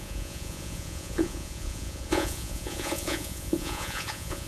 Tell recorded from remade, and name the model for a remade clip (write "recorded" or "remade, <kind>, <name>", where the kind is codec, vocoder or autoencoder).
remade, vocoder, Vocos